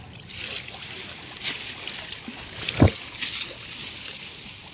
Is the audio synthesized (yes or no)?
no